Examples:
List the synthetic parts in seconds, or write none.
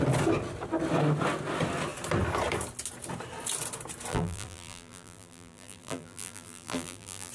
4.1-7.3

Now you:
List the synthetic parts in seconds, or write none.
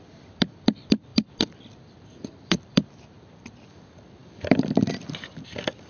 1.1-3.7; 4.2-5.1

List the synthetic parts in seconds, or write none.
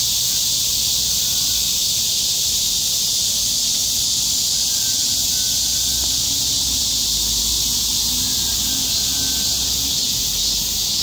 0.0-3.3; 3.8-7.5; 9.5-10.1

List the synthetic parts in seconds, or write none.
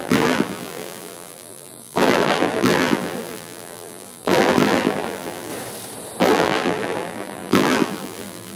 0.0-5.5; 6.2-8.6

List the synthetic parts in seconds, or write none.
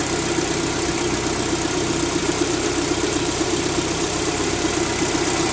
2.2-4.7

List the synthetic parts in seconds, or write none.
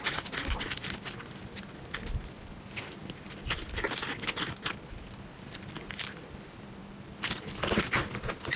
6.8-7.8